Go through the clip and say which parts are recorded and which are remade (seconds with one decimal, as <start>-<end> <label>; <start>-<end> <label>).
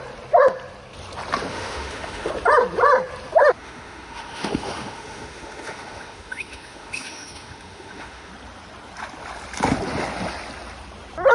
0.0-1.5 recorded; 1.5-2.3 remade; 2.3-3.6 recorded; 3.6-8.3 remade; 8.3-11.3 recorded